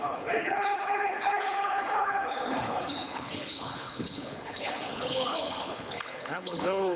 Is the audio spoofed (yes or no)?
yes